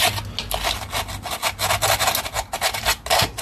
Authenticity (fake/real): real